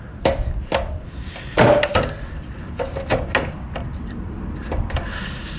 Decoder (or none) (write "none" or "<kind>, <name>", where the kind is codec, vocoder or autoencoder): none